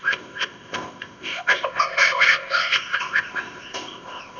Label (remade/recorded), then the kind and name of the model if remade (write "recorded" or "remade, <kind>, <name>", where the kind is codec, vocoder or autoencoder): remade, codec, ZipCodec